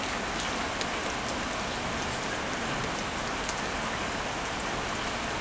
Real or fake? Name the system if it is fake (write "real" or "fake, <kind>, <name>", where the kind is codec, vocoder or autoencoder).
real